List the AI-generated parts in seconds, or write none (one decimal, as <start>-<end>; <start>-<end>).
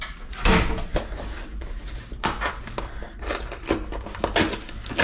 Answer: none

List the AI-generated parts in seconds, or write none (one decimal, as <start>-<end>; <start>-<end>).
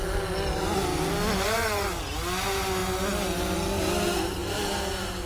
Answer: none